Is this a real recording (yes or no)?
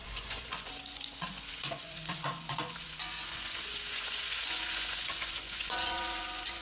no